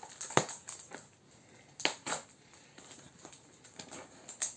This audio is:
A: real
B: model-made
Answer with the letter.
A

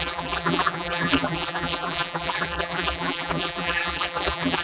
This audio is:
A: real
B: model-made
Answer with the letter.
B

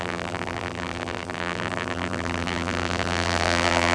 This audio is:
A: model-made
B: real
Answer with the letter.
A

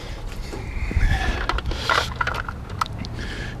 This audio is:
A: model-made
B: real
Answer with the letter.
B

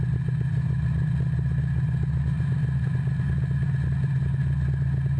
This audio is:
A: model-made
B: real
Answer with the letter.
B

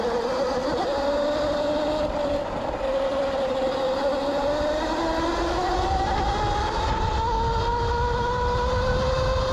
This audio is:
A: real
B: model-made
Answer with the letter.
A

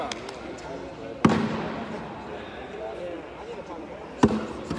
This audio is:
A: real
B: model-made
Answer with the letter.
A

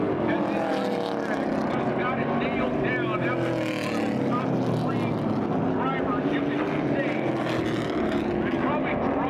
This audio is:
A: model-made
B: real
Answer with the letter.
B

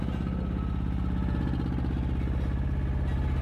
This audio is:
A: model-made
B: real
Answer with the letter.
B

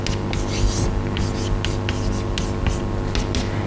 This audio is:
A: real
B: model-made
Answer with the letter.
A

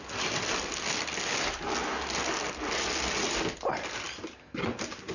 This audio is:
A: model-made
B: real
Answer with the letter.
B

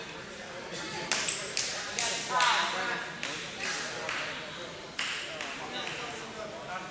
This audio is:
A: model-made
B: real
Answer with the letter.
B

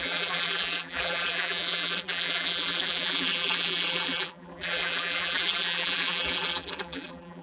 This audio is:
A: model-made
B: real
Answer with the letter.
A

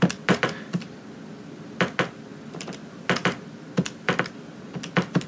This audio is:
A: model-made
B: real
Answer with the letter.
B